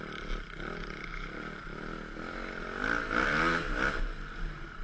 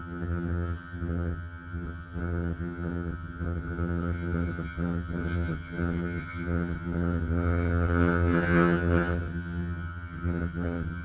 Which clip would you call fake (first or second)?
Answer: second